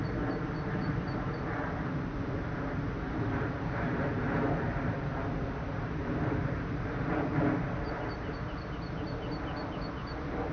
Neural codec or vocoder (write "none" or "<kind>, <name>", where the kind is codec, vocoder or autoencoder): none